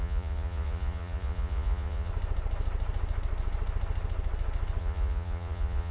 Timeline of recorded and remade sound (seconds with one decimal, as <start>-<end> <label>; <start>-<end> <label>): 0.0-2.1 remade; 2.1-4.8 recorded; 4.8-5.9 remade

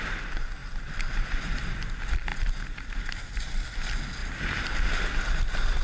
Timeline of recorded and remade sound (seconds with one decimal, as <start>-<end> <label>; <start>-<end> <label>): 0.0-5.8 recorded

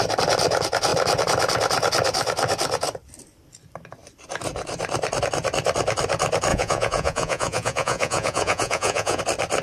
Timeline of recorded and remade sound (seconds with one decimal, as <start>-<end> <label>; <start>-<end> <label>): 0.0-6.5 recorded; 6.5-9.2 remade; 9.2-9.6 recorded

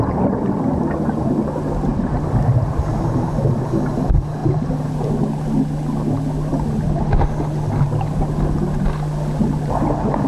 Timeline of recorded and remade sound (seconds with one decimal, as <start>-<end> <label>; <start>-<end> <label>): 0.0-10.3 recorded

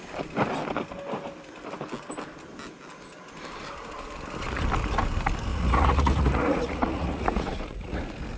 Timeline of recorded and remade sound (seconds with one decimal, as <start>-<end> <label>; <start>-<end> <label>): 0.0-5.5 recorded; 5.5-8.0 remade; 8.0-8.4 recorded

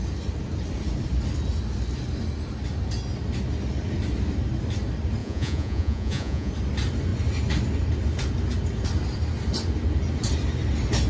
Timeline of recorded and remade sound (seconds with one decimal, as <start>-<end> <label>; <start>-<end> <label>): 0.0-5.2 recorded; 5.2-6.5 remade; 6.5-11.1 recorded

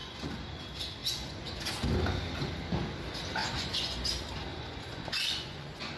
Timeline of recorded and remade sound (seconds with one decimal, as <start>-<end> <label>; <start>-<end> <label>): 0.0-0.6 remade; 0.6-1.0 recorded; 1.0-1.6 remade; 1.6-3.4 recorded; 3.4-4.1 remade; 4.1-4.5 recorded; 4.5-6.0 remade